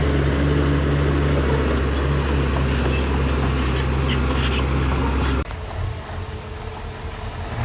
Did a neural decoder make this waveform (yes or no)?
no